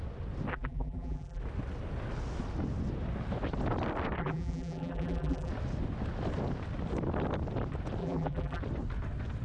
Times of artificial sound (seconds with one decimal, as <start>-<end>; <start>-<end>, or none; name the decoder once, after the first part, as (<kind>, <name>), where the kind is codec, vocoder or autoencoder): 0.5-1.4 (vocoder, BigVGAN v2); 4.2-5.5; 8.0-8.6